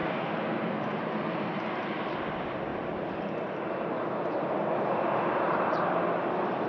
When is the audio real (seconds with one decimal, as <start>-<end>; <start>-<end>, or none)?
2.3-2.7; 5.7-6.7